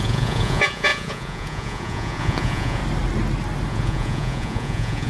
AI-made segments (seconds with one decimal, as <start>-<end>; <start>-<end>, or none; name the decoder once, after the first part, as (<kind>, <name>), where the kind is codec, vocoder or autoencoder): 0.0-2.8 (vocoder, Vocos); 3.7-5.1